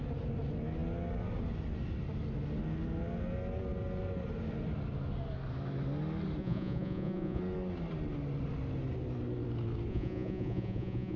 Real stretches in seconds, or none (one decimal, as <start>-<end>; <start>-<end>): 0.0-6.4; 7.4-9.9

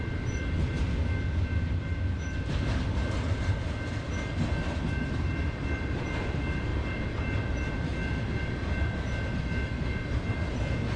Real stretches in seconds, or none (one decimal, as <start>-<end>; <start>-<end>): 0.0-11.0

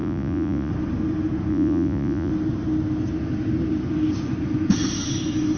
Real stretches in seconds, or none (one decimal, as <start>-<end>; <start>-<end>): 0.7-1.5; 2.3-5.6